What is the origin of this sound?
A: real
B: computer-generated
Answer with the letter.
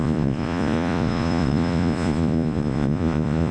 B